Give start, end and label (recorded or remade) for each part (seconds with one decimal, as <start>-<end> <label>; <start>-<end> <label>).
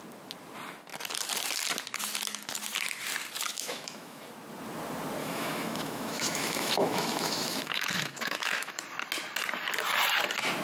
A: 0.0-3.5 recorded; 3.5-4.2 remade; 4.2-5.2 recorded; 5.2-8.8 remade; 8.8-10.6 recorded